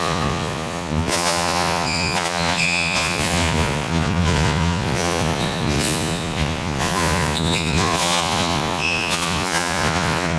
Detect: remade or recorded remade